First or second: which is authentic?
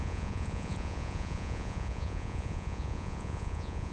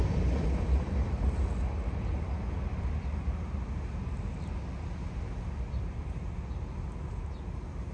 second